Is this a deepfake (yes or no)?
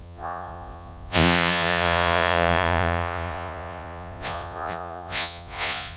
yes